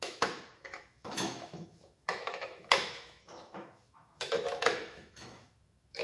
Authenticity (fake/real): fake